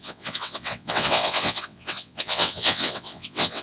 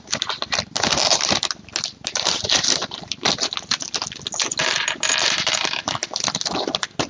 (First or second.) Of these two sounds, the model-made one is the first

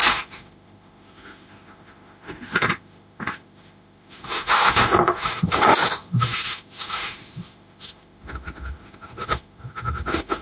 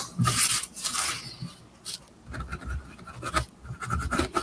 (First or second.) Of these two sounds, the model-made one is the first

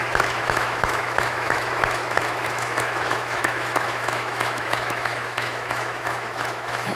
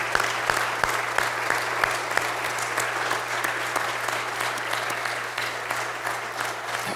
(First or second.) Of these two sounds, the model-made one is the first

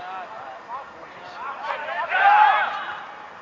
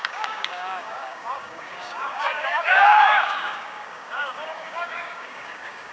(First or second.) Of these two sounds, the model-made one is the second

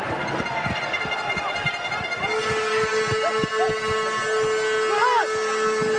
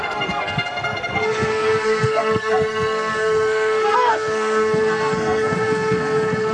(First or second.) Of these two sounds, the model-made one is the second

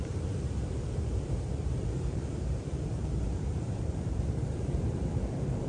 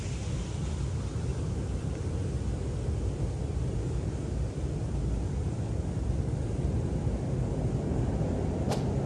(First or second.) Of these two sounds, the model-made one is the first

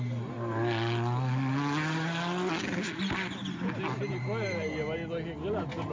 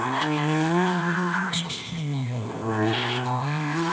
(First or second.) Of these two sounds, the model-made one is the second